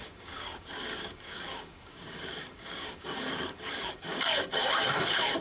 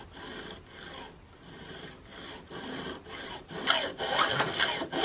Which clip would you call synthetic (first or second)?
first